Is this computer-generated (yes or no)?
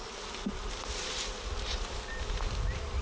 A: no